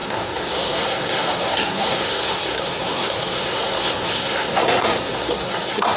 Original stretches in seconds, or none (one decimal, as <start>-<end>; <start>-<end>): none